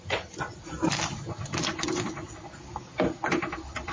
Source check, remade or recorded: recorded